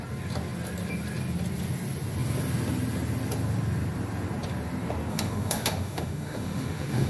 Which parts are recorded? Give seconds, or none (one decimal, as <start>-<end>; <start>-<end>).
0.0-5.1